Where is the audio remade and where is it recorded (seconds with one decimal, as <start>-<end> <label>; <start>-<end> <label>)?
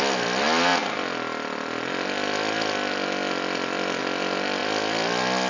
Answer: 0.0-5.5 recorded